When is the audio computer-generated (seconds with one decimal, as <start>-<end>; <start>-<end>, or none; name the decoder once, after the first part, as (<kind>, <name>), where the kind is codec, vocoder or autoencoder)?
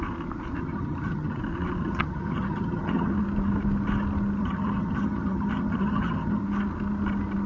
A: 0.6-1.4 (vocoder, HiFi-GAN); 1.8-3.1; 4.4-6.4